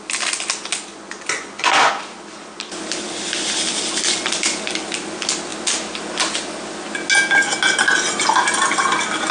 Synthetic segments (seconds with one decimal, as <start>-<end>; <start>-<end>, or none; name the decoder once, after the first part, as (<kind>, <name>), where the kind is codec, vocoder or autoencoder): 0.9-1.9 (vocoder, Vocos)